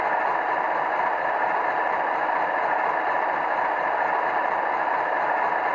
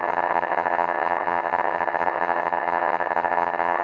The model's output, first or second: second